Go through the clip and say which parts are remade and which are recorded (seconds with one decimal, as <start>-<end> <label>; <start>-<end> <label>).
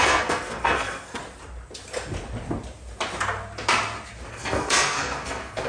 0.0-1.2 remade; 1.2-4.3 recorded; 4.3-5.7 remade